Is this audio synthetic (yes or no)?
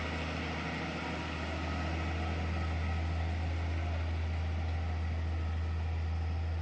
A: no